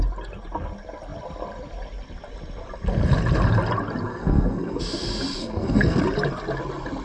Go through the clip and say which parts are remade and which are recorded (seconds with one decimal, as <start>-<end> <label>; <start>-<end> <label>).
0.0-4.1 recorded; 4.1-4.8 remade; 4.8-5.4 recorded; 5.4-6.0 remade; 6.0-7.0 recorded